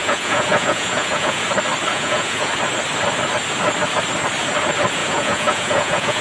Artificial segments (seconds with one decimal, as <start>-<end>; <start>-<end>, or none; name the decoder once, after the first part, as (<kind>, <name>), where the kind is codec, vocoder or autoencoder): 0.0-1.4 (vocoder, Vocos); 1.9-2.5; 5.0-6.2